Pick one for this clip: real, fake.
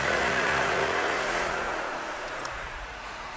fake